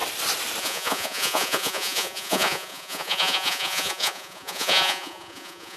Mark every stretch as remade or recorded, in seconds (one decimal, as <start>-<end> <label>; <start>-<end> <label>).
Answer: 0.0-0.6 recorded; 0.6-5.8 remade